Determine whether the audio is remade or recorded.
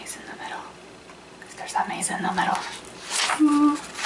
recorded